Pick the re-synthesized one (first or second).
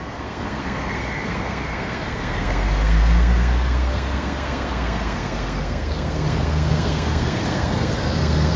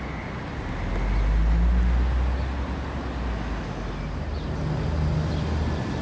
first